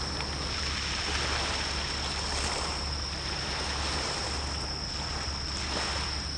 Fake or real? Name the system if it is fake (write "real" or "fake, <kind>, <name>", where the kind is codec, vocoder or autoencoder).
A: real